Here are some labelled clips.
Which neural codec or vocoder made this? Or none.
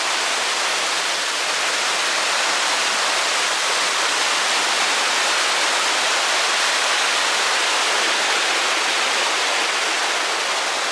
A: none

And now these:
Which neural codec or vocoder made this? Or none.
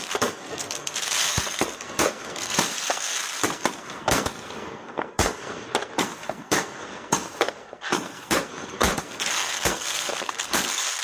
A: codec, SNAC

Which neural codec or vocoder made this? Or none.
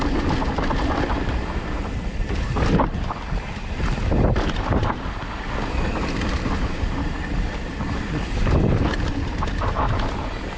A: none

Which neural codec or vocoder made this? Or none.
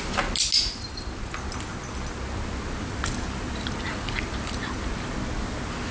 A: none